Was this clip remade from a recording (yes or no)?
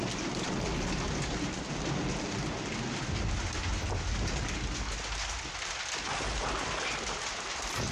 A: no